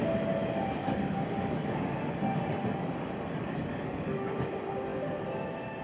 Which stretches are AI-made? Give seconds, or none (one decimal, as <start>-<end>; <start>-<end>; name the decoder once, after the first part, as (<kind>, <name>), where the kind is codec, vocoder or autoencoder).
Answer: 0.8-4.3 (codec, DAC)